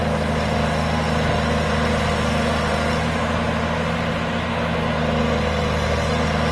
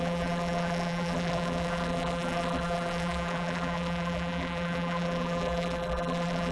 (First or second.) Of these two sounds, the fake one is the second